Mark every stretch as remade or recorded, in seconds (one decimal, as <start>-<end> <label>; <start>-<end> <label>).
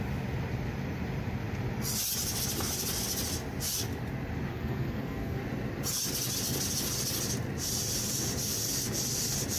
0.0-4.5 recorded; 4.5-5.4 remade; 5.4-9.6 recorded